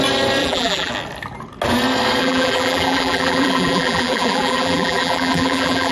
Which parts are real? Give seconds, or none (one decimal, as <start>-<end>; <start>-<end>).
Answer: 0.0-0.4; 0.9-2.2